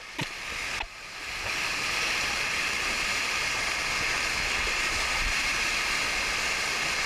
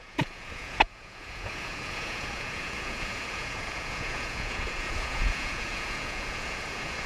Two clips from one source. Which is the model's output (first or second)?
second